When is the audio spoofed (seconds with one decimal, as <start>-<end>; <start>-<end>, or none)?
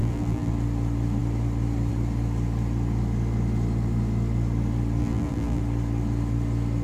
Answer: 0.0-0.5; 5.0-5.6